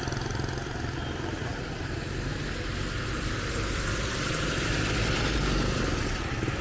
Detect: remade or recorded recorded